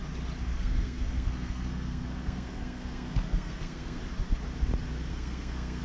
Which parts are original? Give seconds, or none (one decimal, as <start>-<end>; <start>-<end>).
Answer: 0.0-0.5; 4.0-5.1